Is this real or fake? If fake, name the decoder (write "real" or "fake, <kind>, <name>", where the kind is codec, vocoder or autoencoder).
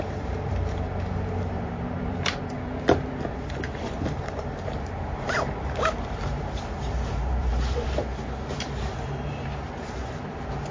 fake, vocoder, BigVGAN v2